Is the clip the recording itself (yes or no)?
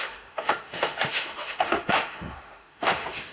no